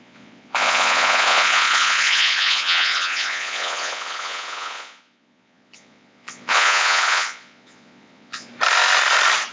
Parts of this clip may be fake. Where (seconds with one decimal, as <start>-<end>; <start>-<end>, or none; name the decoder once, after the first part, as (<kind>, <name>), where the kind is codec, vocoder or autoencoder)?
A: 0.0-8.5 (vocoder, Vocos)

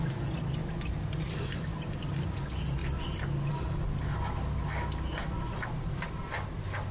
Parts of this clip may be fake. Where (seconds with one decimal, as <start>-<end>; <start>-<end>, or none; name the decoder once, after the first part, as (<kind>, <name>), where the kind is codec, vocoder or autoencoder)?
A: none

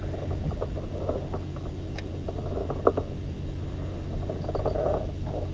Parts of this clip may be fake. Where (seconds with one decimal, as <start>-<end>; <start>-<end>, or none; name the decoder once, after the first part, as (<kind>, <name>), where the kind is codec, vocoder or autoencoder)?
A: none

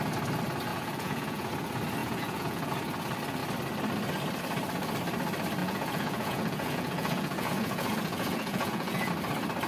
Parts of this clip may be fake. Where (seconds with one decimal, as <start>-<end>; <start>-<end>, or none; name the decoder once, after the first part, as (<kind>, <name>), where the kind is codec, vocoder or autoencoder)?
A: 0.7-1.5 (vocoder, Vocos); 2.0-2.7; 5.6-9.1

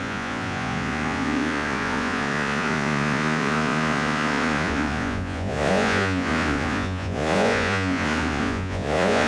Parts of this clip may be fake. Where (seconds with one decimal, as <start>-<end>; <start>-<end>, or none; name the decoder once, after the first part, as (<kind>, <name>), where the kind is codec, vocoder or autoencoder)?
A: 0.0-9.3 (vocoder, Vocos)

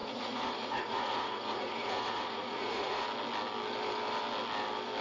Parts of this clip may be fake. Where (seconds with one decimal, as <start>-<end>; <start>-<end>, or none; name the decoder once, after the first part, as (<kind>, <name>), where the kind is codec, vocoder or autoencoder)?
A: 0.0-3.0 (vocoder, Vocos)

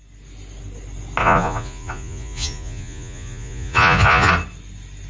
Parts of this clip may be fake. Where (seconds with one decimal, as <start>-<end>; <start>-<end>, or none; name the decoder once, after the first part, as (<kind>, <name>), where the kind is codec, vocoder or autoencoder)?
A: 1.2-4.3 (vocoder, Vocos)